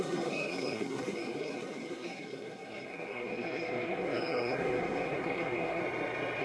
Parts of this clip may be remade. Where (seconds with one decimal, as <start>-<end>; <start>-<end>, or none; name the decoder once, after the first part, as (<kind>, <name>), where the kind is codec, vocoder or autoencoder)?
0.0-5.8 (codec, SNAC)